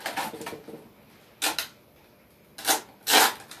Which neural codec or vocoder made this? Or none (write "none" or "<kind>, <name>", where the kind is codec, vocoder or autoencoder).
none